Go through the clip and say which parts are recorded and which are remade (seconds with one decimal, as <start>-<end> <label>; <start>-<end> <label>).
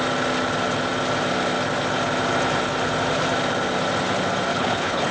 0.0-4.5 recorded; 4.5-5.1 remade